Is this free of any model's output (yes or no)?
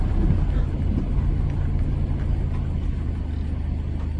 yes